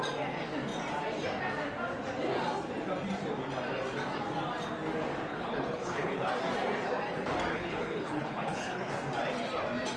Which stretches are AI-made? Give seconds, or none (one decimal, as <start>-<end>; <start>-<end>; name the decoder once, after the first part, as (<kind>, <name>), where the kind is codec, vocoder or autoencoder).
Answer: 5.3-6.3 (codec, HILCodec); 7.5-8.9